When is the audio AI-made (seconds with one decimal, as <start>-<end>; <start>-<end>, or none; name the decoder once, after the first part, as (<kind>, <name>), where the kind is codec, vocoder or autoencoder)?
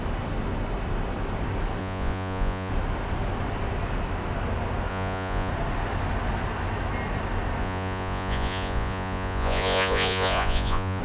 1.8-2.7 (vocoder, Vocos); 4.9-5.5; 7.6-11.0